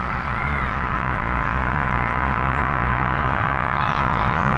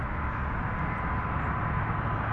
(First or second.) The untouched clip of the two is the second